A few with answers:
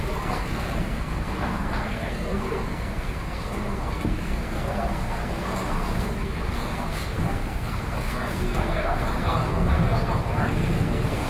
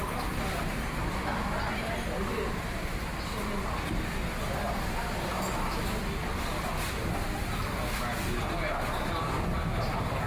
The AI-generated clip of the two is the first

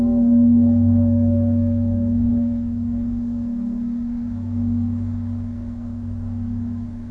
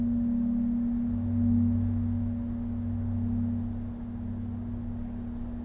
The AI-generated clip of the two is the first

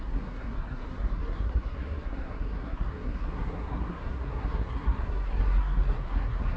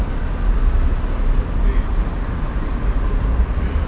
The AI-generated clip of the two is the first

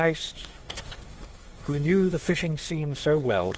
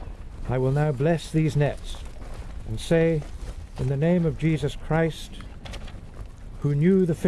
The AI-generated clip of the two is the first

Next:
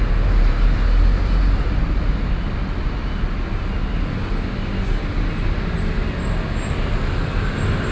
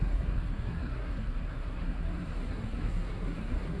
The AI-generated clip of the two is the second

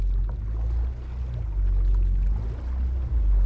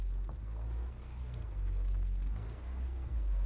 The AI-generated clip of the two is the second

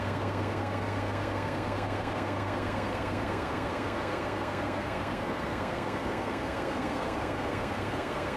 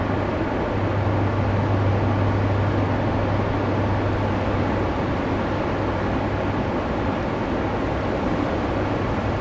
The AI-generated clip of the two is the first